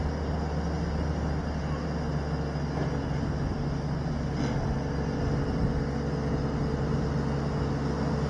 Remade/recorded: recorded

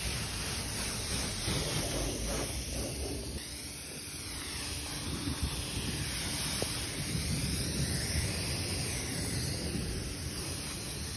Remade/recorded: recorded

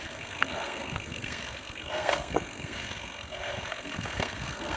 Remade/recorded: remade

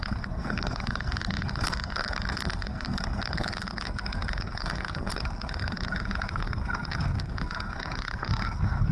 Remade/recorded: remade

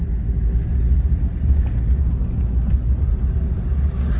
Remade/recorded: recorded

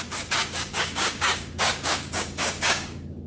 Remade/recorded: remade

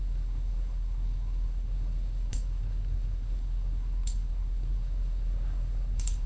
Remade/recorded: remade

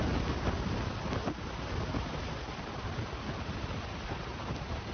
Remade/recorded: recorded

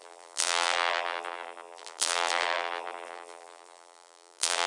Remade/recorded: remade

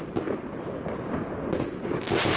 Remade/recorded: recorded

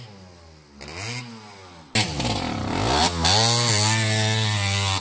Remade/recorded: recorded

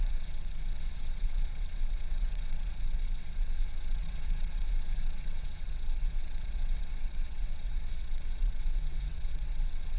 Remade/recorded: remade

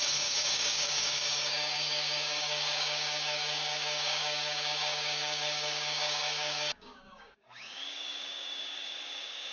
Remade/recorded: remade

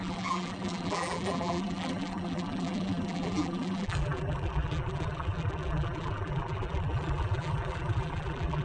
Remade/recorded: remade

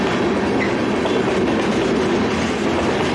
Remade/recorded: recorded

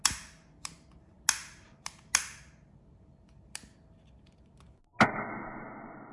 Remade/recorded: recorded